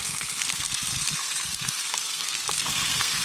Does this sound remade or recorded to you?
remade